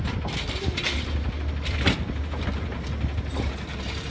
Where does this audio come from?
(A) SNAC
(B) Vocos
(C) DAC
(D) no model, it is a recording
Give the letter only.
D